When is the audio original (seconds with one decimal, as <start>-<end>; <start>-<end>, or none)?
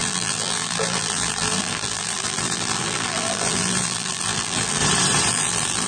4.8-5.3